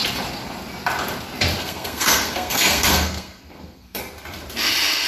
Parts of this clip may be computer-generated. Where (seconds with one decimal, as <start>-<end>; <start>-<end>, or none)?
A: 1.6-4.0